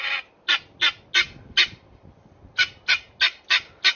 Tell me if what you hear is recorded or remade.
recorded